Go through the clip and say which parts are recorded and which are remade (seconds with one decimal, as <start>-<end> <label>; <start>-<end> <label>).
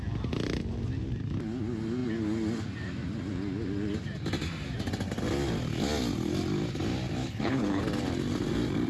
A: 0.0-7.2 recorded; 7.2-7.8 remade; 7.8-8.9 recorded